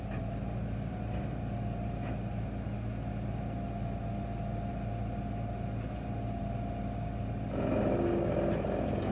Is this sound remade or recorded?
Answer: recorded